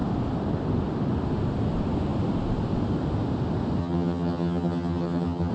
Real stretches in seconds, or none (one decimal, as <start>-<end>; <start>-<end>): 0.0-3.8

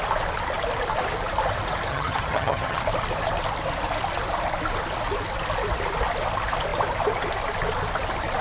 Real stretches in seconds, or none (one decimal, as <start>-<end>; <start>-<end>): 0.0-1.9; 2.8-8.4

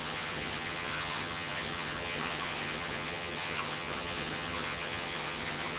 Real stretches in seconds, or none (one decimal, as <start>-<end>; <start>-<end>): none

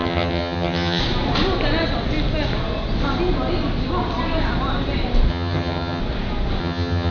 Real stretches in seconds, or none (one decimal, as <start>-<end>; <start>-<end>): 1.0-5.3; 6.0-6.6